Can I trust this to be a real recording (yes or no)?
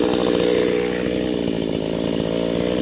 yes